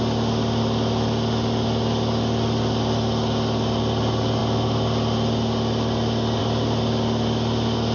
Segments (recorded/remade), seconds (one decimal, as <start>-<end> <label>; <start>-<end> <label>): 0.0-7.9 recorded